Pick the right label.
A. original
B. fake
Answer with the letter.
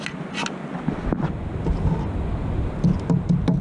A